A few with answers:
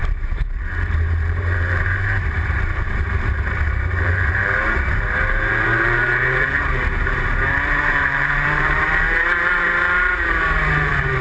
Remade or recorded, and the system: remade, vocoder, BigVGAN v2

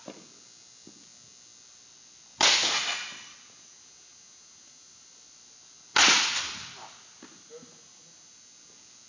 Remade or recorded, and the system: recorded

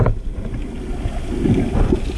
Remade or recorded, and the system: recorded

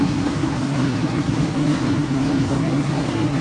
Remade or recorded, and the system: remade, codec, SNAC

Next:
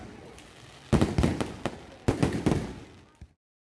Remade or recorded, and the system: recorded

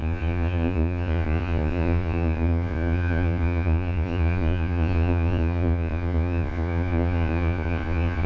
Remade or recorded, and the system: remade, vocoder, Vocos